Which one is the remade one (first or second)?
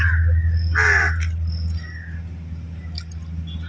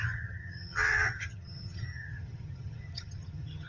second